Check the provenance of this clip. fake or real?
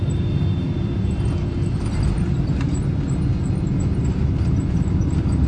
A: real